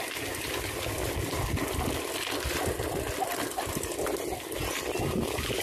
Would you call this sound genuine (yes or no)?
yes